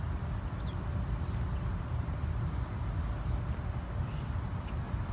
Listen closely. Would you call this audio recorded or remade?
recorded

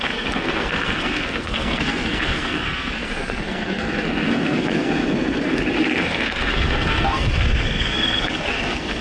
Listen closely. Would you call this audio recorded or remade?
remade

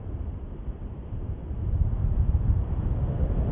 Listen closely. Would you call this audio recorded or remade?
recorded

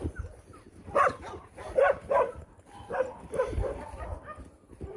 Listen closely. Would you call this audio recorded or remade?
recorded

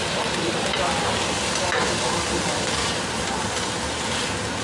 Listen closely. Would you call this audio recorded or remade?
recorded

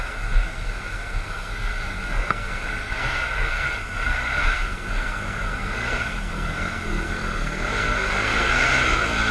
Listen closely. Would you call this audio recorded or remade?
remade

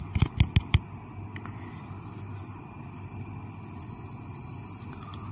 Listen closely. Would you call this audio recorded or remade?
recorded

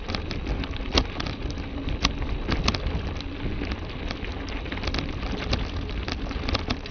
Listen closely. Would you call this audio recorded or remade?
recorded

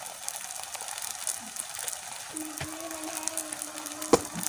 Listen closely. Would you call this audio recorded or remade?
recorded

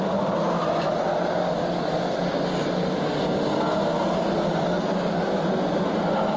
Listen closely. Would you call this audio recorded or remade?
recorded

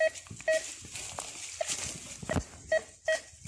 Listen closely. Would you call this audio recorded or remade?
recorded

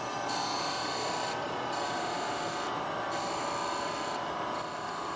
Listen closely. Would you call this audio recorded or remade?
recorded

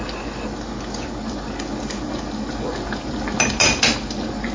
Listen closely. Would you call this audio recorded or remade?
recorded